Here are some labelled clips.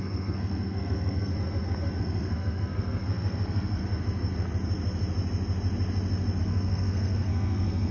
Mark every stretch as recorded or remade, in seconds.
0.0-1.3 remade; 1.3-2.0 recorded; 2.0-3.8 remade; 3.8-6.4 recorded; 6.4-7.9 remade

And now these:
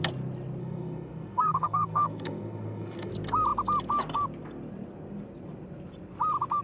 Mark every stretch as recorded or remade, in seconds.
0.0-0.6 recorded; 0.6-3.1 remade; 3.1-6.6 recorded

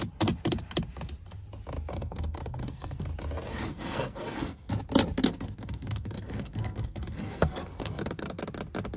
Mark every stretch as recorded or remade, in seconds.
0.0-1.9 recorded; 1.9-3.1 remade; 3.1-3.5 recorded; 3.5-4.7 remade; 4.7-5.2 recorded; 5.2-8.4 remade; 8.4-9.0 recorded

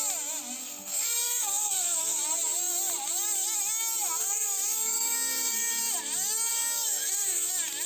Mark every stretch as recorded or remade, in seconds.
0.0-0.6 recorded; 0.6-2.2 remade; 2.2-4.2 recorded; 4.2-5.8 remade; 5.8-6.5 recorded; 6.5-7.5 remade; 7.5-7.9 recorded